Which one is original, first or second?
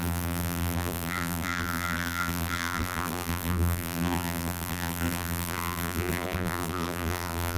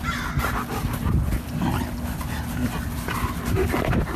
second